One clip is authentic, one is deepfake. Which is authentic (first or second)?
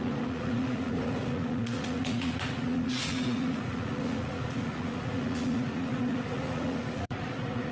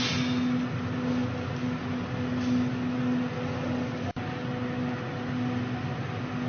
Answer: second